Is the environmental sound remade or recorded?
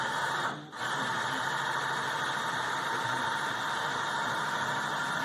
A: remade